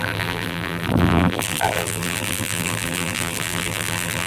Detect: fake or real fake